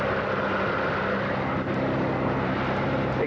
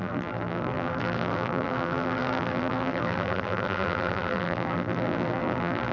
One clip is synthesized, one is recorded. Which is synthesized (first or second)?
second